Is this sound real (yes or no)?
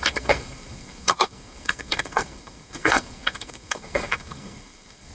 no